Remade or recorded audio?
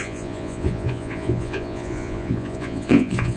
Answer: remade